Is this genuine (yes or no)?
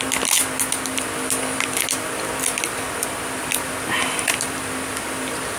yes